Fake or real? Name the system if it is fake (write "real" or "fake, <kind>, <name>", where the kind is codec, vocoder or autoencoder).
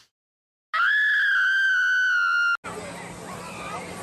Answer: real